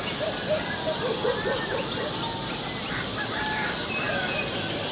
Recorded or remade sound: recorded